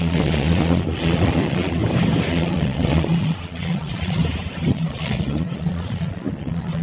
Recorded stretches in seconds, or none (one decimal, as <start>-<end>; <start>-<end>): 1.8-2.3; 4.2-4.7